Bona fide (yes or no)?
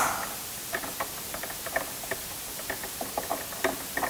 yes